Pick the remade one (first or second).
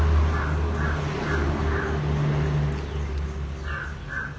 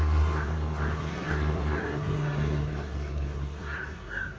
second